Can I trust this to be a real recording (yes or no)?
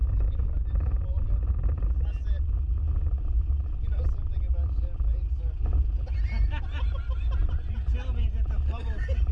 yes